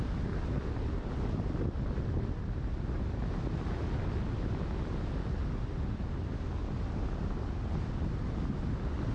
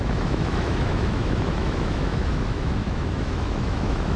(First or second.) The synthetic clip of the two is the second